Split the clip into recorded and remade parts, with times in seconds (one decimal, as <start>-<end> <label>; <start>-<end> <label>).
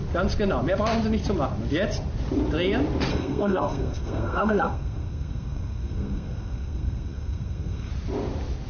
0.0-3.1 recorded; 3.1-7.9 remade; 7.9-8.7 recorded